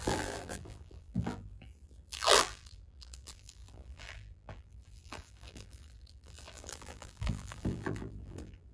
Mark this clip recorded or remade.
remade